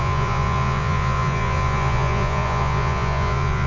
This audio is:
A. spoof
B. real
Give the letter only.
A